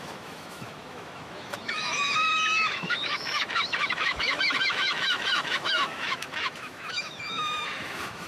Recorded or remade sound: remade